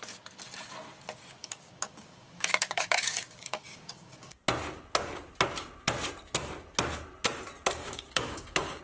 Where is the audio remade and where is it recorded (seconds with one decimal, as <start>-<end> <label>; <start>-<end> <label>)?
0.0-1.4 recorded; 1.4-4.4 remade; 4.4-7.8 recorded; 7.8-8.8 remade